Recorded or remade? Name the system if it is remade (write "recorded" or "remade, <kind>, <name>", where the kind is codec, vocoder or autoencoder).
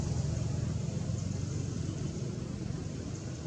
recorded